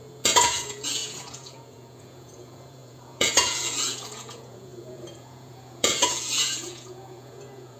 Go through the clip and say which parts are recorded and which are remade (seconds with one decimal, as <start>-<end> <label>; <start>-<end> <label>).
0.0-7.8 remade